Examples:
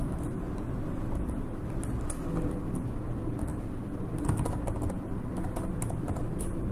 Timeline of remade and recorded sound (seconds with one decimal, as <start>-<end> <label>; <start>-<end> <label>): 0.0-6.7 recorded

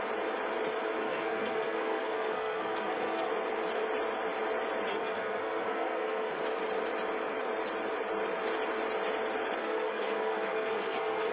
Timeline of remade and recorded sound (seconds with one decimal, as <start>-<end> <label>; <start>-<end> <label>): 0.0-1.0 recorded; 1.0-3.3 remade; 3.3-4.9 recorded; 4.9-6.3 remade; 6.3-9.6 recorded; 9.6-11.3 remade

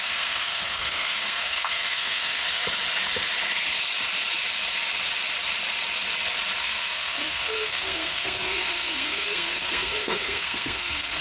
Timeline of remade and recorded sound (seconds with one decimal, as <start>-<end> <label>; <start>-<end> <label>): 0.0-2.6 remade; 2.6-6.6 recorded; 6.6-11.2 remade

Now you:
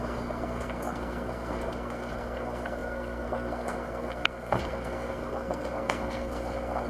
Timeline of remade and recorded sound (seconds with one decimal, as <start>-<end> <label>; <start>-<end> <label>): 0.0-6.9 remade